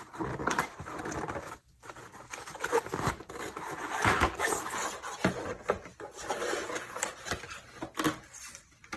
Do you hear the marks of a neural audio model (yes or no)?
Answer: no